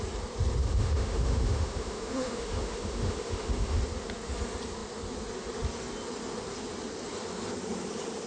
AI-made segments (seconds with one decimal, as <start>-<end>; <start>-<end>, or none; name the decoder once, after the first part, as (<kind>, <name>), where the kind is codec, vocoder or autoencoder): 0.6-3.8 (autoencoder, DAC-VAE)